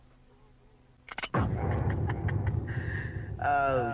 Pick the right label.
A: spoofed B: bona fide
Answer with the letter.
B